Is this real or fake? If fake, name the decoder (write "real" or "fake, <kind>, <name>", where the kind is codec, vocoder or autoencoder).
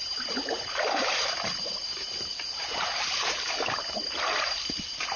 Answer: real